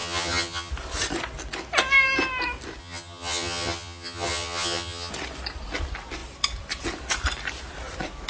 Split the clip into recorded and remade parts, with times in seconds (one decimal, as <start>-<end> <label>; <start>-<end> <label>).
0.0-0.7 remade; 0.7-2.8 recorded; 2.8-5.1 remade; 5.1-8.3 recorded

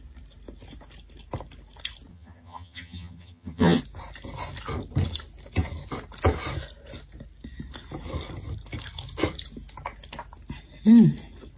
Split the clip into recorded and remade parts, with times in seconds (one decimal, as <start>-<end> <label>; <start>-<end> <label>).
0.0-2.1 recorded; 2.1-3.8 remade; 3.8-11.6 recorded

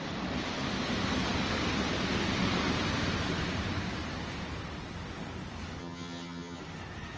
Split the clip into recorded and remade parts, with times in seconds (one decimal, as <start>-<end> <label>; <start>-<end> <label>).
0.0-5.8 recorded; 5.8-6.6 remade; 6.6-7.2 recorded

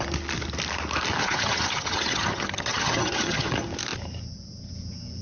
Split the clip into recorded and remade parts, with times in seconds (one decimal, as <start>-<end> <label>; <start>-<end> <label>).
0.0-1.2 recorded; 1.2-3.5 remade; 3.5-5.2 recorded

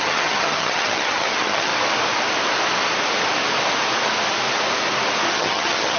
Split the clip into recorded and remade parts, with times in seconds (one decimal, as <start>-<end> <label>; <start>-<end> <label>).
0.0-1.7 remade; 1.7-5.3 recorded; 5.3-6.0 remade

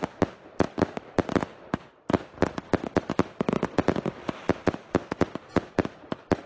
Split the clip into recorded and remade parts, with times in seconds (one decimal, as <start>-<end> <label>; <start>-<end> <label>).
0.0-6.5 recorded

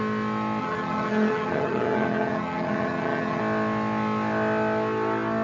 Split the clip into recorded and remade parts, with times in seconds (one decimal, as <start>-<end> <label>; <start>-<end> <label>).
0.0-0.6 recorded; 0.6-3.4 remade; 3.4-5.4 recorded

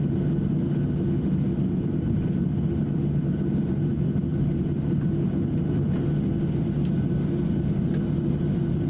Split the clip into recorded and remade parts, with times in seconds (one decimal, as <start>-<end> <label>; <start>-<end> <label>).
0.0-8.9 recorded